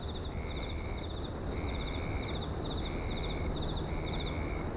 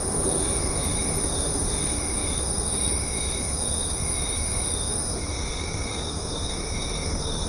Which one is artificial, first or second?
second